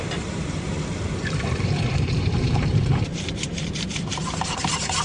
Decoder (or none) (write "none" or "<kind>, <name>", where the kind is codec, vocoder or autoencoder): vocoder, BigVGAN v2